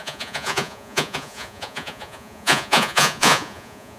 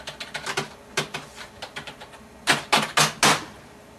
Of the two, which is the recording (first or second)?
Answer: second